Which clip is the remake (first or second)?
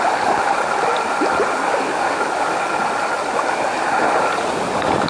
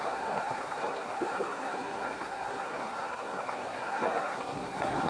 second